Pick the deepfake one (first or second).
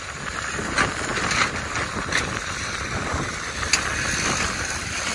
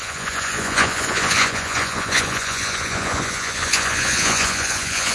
second